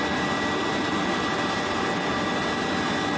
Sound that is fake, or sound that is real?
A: real